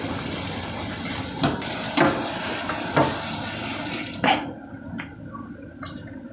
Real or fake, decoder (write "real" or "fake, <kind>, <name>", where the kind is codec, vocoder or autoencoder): real